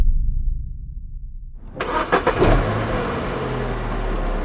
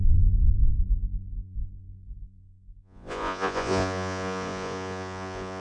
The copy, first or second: second